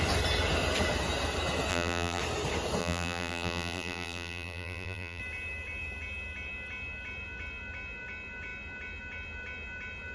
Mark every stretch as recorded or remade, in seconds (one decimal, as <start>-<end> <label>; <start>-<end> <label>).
0.0-1.7 recorded; 1.7-2.2 remade; 2.2-2.8 recorded; 2.8-5.2 remade; 5.2-10.1 recorded